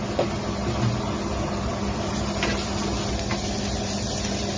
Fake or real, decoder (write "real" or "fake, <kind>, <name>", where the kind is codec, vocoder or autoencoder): real